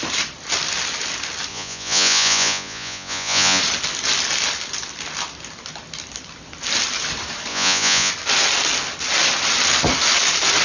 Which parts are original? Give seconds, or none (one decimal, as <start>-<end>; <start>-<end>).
0.0-1.5; 3.6-7.5; 8.1-10.6